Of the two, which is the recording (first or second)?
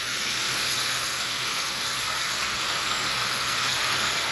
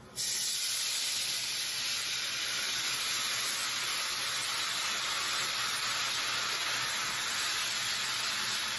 second